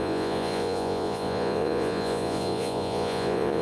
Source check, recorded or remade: remade